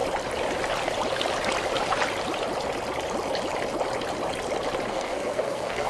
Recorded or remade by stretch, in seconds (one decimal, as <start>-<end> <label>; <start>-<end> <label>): 0.0-4.9 recorded; 4.9-5.9 remade